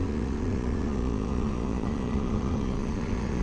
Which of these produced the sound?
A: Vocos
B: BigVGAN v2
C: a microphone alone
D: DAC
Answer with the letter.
A